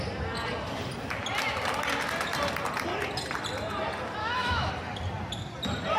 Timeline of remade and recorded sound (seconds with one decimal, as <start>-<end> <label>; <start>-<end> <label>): 0.0-4.2 recorded; 4.2-4.7 remade; 4.7-6.0 recorded